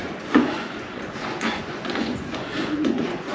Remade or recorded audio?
remade